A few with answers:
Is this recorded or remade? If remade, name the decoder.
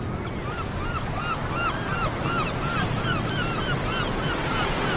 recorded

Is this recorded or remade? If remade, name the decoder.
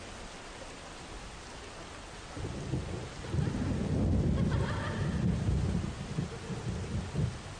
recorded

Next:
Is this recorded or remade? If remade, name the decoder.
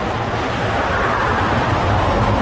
recorded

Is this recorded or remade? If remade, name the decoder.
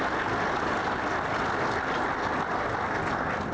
recorded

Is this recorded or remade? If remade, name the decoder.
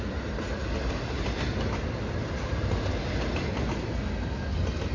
recorded